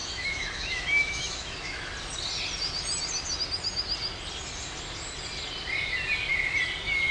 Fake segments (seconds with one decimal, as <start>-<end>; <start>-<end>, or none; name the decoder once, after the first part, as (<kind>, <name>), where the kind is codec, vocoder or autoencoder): 0.0-1.9 (autoencoder, DAC-VAE)